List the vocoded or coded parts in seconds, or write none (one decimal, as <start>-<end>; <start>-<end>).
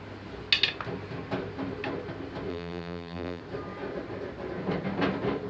2.5-3.4